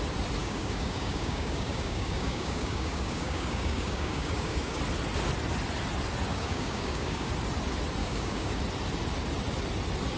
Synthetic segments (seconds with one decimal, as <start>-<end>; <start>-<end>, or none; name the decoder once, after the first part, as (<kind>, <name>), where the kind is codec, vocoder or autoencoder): 0.4-4.8 (codec, DAC); 6.3-7.3; 8.0-8.6

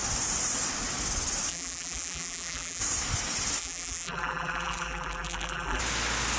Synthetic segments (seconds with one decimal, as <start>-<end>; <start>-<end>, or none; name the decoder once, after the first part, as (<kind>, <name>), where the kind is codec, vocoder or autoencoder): 1.5-2.8 (vocoder, BigVGAN v2); 3.6-5.8

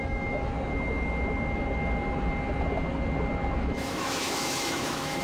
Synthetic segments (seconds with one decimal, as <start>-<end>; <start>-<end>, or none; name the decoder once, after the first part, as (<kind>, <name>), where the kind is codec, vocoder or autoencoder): 0.0-0.5 (autoencoder, DAC-VAE); 3.6-5.2

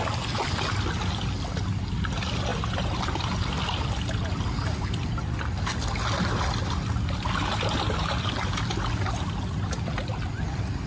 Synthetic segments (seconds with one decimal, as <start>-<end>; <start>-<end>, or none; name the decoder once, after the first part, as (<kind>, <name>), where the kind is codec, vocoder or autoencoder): none

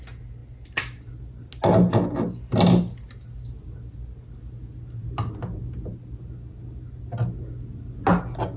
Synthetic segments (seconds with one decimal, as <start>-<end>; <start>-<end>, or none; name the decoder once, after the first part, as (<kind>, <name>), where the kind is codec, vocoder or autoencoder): none

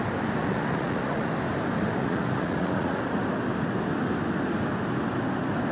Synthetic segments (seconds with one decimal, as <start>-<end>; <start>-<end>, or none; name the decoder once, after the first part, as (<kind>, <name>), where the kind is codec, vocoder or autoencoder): 0.4-1.3 (vocoder, Vocos); 2.0-3.0